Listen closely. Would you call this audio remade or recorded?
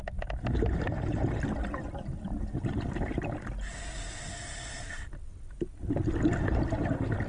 recorded